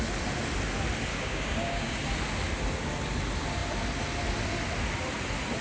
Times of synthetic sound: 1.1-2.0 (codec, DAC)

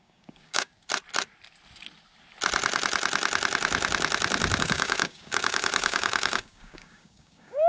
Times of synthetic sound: 0.0-0.7 (codec, DAC); 4.6-7.7

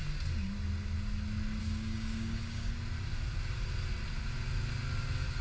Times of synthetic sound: 1.6-2.7 (codec, DAC)

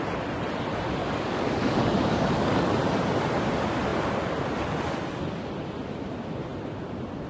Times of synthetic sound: 1.0-2.7 (codec, DAC)

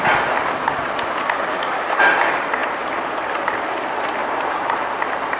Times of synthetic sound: 1.5-2.0 (codec, DAC)

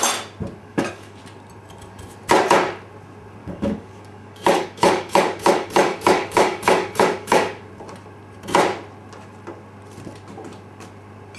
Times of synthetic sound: 0.6-1.2 (codec, DAC); 3.4-7.7

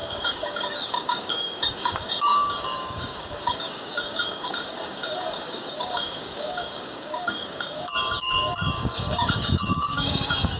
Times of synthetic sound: 0.0-10.6 (codec, DAC)